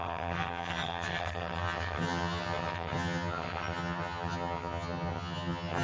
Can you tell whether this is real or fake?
fake